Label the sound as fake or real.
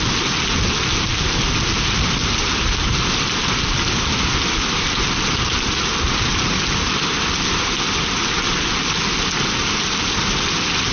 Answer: real